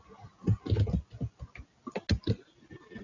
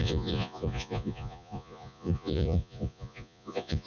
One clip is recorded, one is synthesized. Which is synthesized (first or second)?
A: second